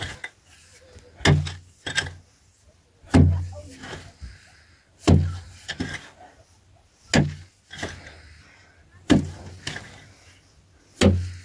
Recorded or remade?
recorded